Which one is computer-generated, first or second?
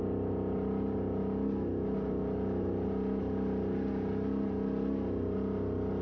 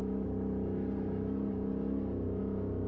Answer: second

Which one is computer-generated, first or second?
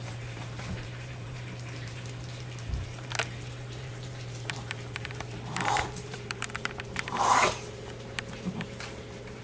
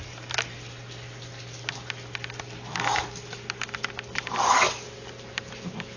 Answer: first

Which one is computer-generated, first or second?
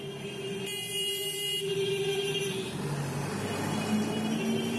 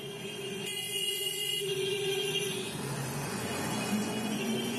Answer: second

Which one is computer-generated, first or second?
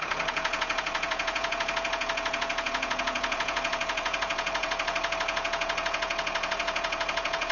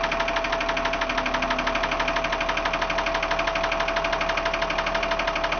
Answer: first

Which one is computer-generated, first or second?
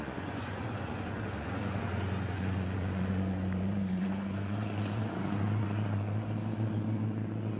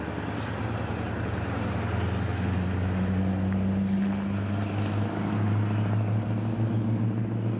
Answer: first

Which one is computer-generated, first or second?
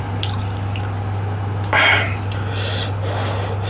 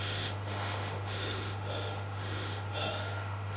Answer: second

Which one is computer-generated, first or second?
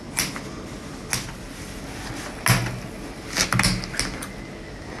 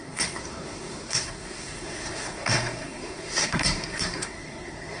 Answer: second